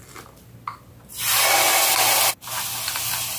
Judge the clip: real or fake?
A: real